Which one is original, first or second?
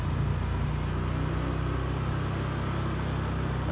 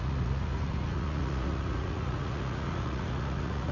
first